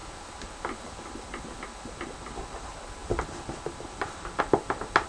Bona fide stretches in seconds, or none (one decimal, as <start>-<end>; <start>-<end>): 0.0-5.1